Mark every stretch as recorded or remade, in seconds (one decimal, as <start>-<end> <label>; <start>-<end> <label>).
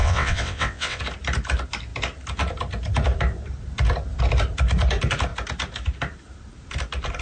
0.0-1.0 remade; 1.0-7.2 recorded